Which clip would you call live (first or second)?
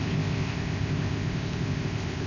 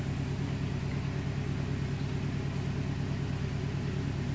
second